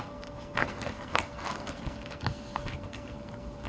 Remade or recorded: remade